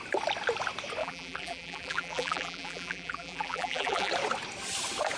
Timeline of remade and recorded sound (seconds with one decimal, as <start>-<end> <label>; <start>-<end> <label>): 0.0-1.0 recorded; 1.0-4.1 remade; 4.1-5.2 recorded